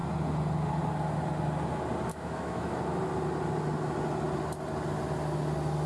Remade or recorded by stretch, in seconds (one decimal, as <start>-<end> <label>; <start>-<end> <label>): 0.0-2.1 recorded; 2.1-2.8 remade; 2.8-5.9 recorded

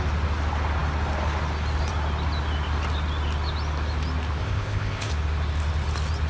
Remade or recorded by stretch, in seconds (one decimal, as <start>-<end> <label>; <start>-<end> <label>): 0.0-4.4 recorded; 4.4-5.1 remade; 5.1-6.3 recorded